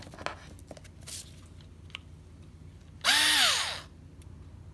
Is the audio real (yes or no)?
yes